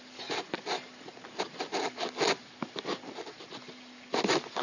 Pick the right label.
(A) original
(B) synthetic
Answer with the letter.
A